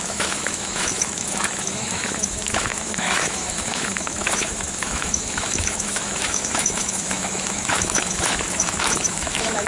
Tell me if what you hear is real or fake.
fake